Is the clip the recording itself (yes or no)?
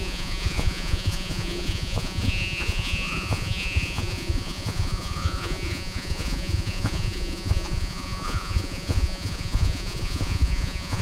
no